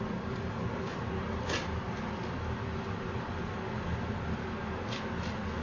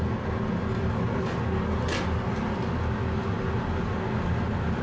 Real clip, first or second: second